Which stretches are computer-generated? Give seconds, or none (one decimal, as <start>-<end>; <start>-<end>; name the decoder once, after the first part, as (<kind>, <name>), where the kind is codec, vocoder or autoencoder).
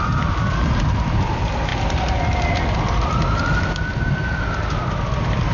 none